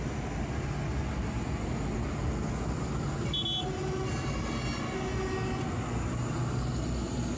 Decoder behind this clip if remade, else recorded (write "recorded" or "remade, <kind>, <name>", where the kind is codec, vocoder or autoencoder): recorded